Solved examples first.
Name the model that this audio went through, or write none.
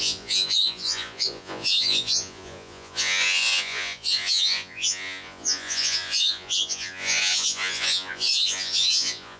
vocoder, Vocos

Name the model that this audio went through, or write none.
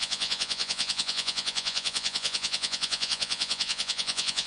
vocoder, Vocos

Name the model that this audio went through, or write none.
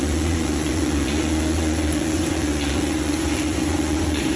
vocoder, Vocos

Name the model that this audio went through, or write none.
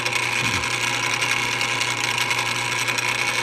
none